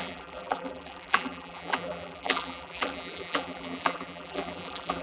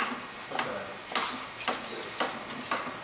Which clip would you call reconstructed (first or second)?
first